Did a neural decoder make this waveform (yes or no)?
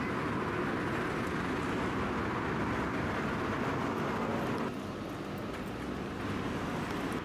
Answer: no